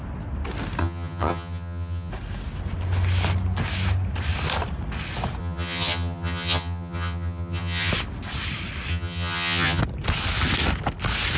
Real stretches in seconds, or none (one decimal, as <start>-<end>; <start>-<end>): 0.0-0.8; 2.1-5.4; 7.9-8.9; 9.8-11.4